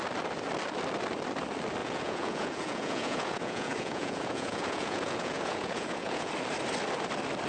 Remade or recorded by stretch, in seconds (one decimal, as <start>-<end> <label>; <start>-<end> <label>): 0.0-1.8 recorded; 1.8-6.3 remade; 6.3-7.5 recorded